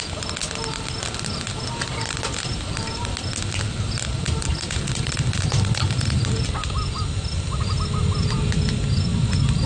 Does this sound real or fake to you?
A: real